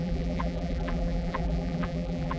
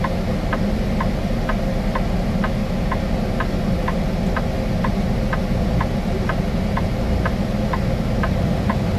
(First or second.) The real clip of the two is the second